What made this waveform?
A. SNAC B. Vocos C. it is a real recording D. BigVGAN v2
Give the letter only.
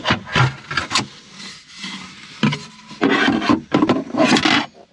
C